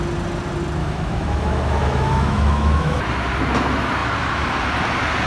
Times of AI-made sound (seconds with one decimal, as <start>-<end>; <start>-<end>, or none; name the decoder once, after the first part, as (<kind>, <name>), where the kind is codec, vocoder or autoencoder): 0.8-3.0 (autoencoder, DAC-VAE)